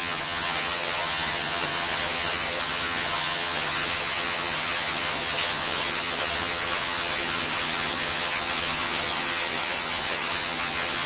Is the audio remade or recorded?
remade